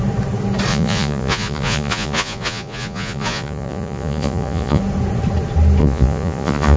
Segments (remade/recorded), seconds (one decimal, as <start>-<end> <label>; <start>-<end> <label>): 0.0-0.7 recorded; 0.7-4.8 remade; 4.8-5.8 recorded; 5.8-6.8 remade

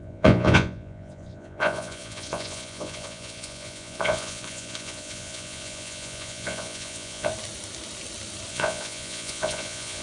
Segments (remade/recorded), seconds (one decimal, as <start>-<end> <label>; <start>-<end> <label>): 0.0-7.3 remade; 7.3-8.5 recorded; 8.5-10.0 remade

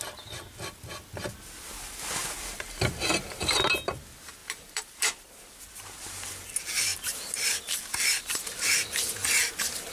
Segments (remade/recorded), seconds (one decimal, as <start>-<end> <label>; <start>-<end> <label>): 0.0-4.4 recorded; 4.4-6.3 remade; 6.3-9.9 recorded

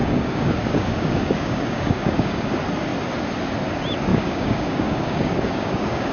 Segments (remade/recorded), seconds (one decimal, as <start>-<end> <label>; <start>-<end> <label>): 0.0-2.5 remade; 2.5-4.1 recorded; 4.1-6.1 remade